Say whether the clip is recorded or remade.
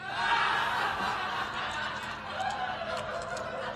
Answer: remade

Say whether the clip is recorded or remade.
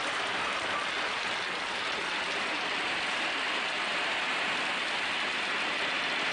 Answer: recorded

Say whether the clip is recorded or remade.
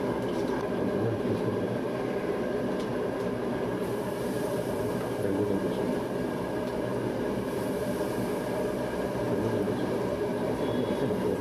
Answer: remade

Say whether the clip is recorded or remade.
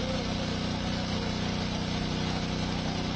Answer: recorded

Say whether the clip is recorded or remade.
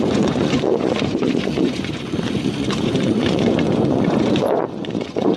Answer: remade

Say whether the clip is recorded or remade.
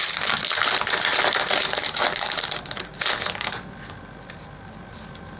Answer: recorded